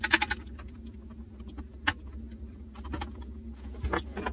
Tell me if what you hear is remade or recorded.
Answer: recorded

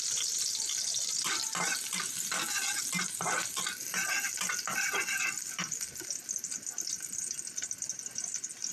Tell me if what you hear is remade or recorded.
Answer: recorded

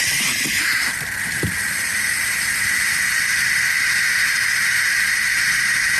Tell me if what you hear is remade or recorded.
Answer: recorded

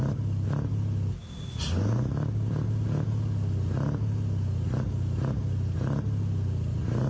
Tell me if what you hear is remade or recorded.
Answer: recorded